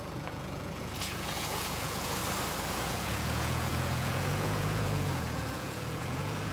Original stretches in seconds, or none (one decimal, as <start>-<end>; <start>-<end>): 2.2-2.7